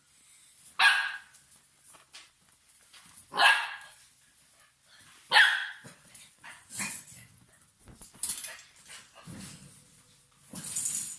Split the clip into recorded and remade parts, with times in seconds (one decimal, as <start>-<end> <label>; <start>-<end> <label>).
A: 0.0-5.6 recorded; 5.6-7.8 remade; 7.8-11.2 recorded